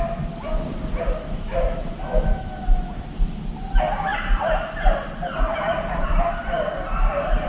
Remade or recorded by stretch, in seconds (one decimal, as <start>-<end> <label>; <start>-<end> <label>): 0.0-1.2 recorded; 1.2-3.0 remade; 3.0-7.5 recorded